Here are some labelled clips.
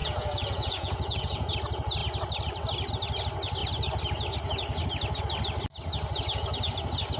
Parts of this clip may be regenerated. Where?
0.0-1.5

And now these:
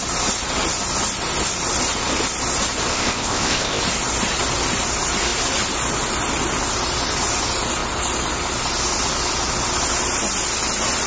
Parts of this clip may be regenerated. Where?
2.9-3.8

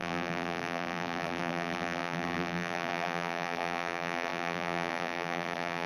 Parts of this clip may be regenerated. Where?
0.0-5.9

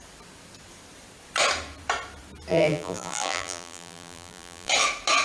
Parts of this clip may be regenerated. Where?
2.5-4.7

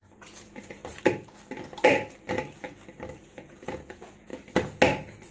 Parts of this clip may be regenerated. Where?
0.0-0.8; 3.2-4.3

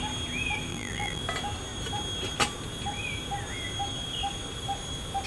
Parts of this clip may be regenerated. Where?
0.7-1.2

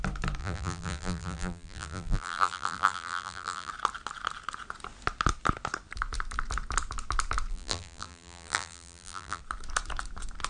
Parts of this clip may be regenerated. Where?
0.4-3.7; 7.5-9.4

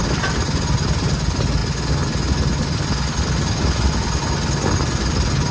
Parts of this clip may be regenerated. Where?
none